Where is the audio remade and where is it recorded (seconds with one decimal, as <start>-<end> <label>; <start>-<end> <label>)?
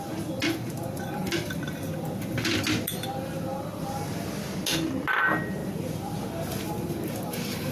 0.0-7.7 recorded